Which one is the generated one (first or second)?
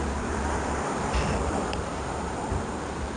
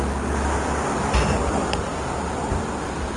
first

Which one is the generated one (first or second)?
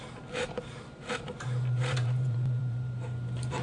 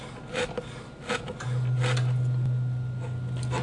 first